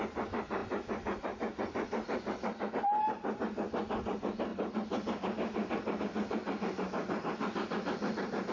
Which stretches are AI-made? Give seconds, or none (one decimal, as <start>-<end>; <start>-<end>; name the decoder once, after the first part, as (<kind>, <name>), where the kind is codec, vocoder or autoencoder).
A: none